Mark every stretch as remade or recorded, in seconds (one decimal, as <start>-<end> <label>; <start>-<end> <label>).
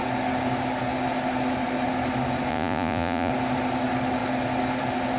0.0-2.5 recorded; 2.5-3.3 remade; 3.3-5.2 recorded